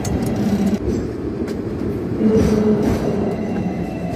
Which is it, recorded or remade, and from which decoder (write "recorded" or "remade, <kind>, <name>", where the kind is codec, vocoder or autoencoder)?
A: remade, vocoder, BigVGAN v2